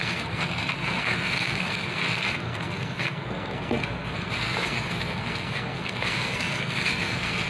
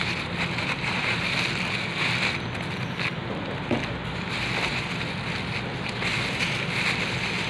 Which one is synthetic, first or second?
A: first